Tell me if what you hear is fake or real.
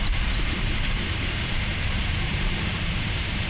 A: fake